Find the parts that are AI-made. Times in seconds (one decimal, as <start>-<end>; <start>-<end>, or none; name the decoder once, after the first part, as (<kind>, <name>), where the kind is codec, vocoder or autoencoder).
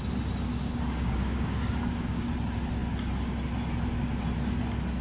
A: 0.5-2.3 (codec, DAC)